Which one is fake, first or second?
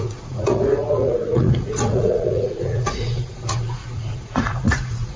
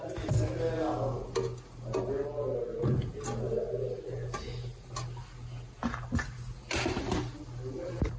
first